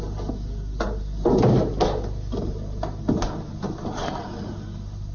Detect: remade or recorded recorded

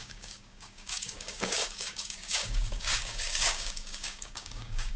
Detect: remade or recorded remade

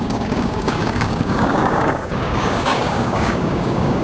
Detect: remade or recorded remade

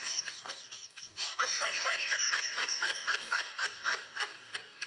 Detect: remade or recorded remade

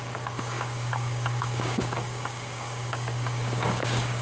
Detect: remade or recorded remade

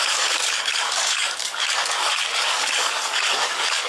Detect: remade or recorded remade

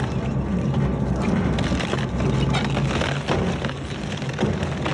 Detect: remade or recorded recorded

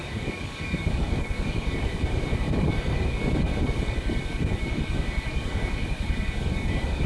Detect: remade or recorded remade